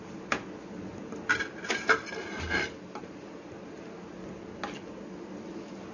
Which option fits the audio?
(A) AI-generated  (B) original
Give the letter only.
B